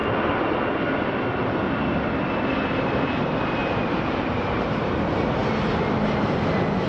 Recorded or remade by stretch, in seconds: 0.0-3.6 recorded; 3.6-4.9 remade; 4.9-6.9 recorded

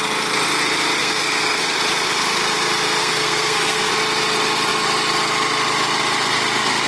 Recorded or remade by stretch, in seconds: 0.0-1.0 recorded; 1.0-1.6 remade; 1.6-3.0 recorded; 3.0-3.9 remade; 3.9-6.9 recorded

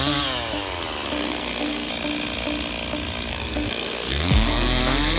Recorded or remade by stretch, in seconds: 0.0-1.2 recorded; 1.2-1.9 remade; 1.9-3.3 recorded; 3.3-4.8 remade; 4.8-5.2 recorded

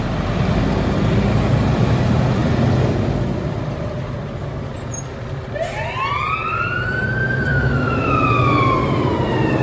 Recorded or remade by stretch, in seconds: 0.0-7.5 recorded; 7.5-8.1 remade; 8.1-9.6 recorded

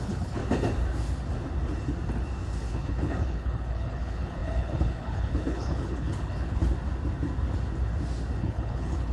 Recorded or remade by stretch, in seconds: 0.0-0.4 remade; 0.4-2.7 recorded; 2.7-6.6 remade; 6.6-8.4 recorded; 8.4-9.1 remade

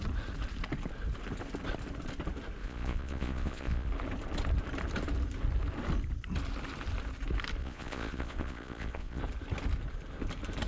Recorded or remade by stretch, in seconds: 0.0-2.6 recorded; 2.6-3.9 remade; 3.9-7.6 recorded; 7.6-9.2 remade; 9.2-10.7 recorded

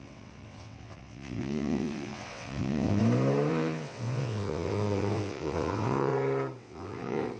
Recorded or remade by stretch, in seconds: 0.0-3.0 remade; 3.0-3.5 recorded; 3.5-6.1 remade; 6.1-6.6 recorded; 6.6-7.4 remade

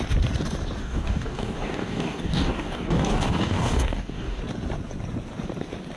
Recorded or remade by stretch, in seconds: 0.0-0.8 recorded; 0.8-4.4 remade; 4.4-6.0 recorded